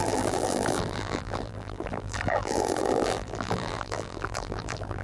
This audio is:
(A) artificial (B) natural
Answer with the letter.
A